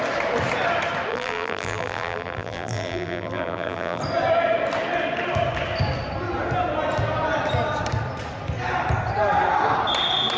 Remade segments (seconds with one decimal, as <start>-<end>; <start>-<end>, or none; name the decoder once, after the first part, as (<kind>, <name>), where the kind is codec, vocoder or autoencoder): 1.1-4.0 (vocoder, BigVGAN v2)

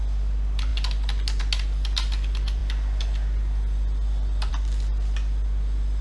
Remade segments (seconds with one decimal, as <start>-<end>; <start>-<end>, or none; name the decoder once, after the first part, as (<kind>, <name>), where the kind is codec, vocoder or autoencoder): none

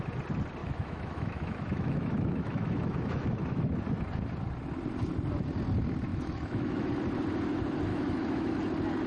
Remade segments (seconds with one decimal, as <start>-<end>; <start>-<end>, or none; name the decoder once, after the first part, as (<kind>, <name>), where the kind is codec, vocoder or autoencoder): 0.6-3.7 (autoencoder, DAC-VAE); 6.1-6.9; 7.9-8.5

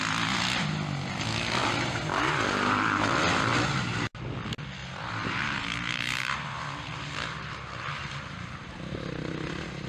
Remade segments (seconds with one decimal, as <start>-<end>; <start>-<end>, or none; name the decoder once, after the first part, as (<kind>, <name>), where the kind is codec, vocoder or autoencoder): 1.6-2.3 (vocoder, BigVGAN v2); 3.5-4.1; 4.8-9.1

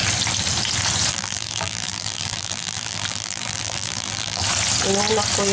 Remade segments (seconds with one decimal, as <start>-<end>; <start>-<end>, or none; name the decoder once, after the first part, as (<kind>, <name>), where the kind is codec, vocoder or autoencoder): 1.1-4.4 (vocoder, BigVGAN v2)

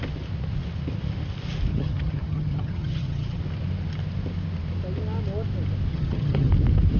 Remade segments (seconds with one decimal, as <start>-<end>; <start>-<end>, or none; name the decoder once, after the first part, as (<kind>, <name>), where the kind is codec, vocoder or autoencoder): 1.7-3.4 (vocoder, HiFi-GAN); 5.9-6.5

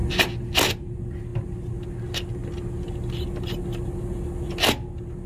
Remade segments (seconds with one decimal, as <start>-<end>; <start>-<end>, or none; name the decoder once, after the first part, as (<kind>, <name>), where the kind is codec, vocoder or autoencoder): none

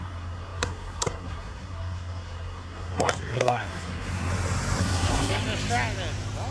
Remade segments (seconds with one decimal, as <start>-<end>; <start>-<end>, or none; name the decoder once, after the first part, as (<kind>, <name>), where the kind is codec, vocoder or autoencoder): 0.0-4.3 (codec, SNAC); 4.8-5.4